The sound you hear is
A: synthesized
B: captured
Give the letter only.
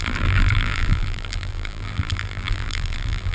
A